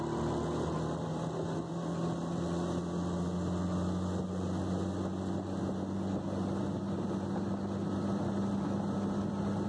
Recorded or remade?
recorded